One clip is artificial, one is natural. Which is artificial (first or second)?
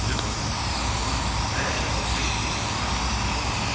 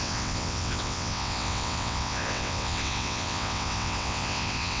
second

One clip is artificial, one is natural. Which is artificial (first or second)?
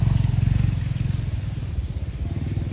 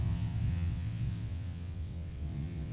second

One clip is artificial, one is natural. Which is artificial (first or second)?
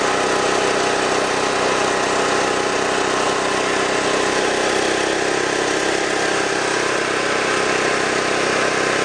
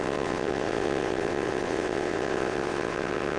second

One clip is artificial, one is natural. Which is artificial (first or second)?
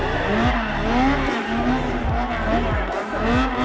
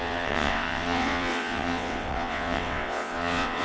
second